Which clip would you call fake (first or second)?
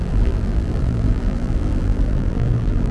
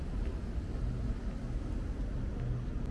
first